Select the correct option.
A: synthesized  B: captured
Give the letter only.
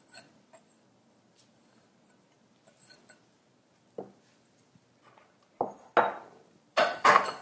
B